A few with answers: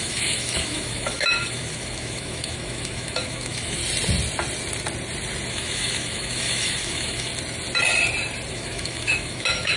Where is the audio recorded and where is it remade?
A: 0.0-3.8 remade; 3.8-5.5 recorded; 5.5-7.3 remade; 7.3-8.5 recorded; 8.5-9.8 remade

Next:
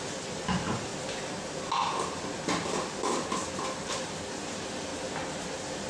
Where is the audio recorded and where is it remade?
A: 0.0-0.9 remade; 0.9-3.9 recorded; 3.9-4.9 remade; 4.9-5.9 recorded

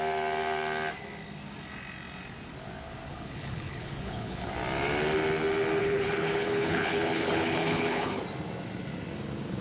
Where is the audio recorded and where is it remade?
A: 0.0-3.1 recorded; 3.1-4.5 remade; 4.5-5.8 recorded; 5.8-8.2 remade; 8.2-9.6 recorded

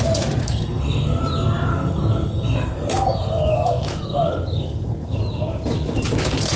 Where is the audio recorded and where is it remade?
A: 0.0-0.4 recorded; 0.4-1.2 remade; 1.2-1.7 recorded; 1.7-5.2 remade; 5.2-6.6 recorded

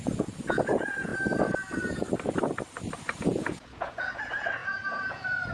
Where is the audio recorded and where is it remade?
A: 0.0-1.1 remade; 1.1-3.2 recorded; 3.2-5.5 remade

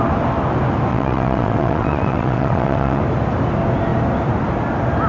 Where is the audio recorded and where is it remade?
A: 0.0-0.9 recorded; 0.9-3.0 remade; 3.0-5.1 recorded